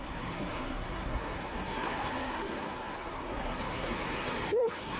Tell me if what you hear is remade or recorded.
remade